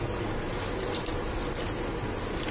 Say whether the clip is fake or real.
real